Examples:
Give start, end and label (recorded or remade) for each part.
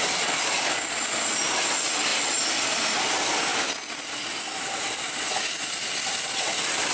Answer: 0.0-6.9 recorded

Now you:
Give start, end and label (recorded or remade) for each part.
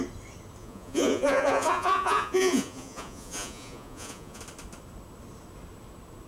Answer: 0.0-0.6 recorded; 0.6-4.4 remade; 4.4-6.3 recorded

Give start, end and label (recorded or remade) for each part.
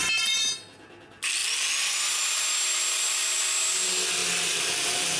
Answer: 0.0-5.2 recorded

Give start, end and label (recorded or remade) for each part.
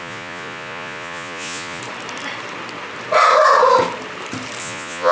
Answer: 0.0-1.8 remade; 1.8-4.6 recorded; 4.6-5.1 remade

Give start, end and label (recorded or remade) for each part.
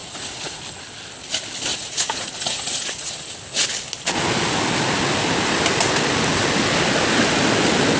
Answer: 0.0-0.6 remade; 0.6-1.7 recorded; 1.7-3.1 remade; 3.1-8.0 recorded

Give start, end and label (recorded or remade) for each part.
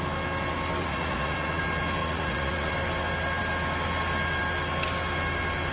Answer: 0.0-0.8 recorded; 0.8-1.6 remade; 1.6-2.0 recorded; 2.0-2.7 remade; 2.7-5.7 recorded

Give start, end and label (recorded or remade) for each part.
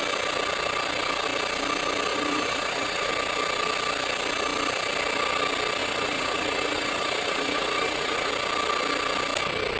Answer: 0.0-2.1 recorded; 2.1-3.1 remade; 3.1-5.8 recorded; 5.8-8.3 remade; 8.3-9.8 recorded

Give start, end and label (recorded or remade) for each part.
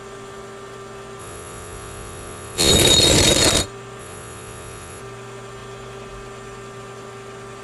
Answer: 0.0-1.2 recorded; 1.2-2.7 remade; 2.7-4.0 recorded; 4.0-5.0 remade; 5.0-7.6 recorded